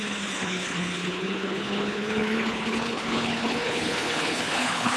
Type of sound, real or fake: fake